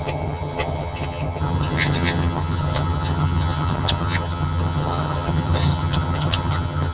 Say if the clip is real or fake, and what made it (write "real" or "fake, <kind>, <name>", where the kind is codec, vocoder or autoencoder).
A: fake, vocoder, HiFi-GAN